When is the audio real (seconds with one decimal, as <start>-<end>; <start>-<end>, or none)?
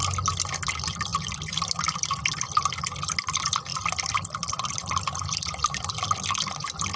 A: 0.0-1.1; 1.6-3.7; 5.9-7.0